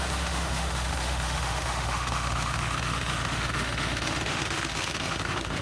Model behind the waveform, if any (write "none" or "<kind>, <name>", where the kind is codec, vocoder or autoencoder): autoencoder, DAC-VAE